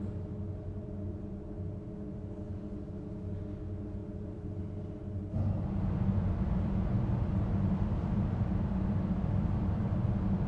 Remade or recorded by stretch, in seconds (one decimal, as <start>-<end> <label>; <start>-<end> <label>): 0.0-10.5 recorded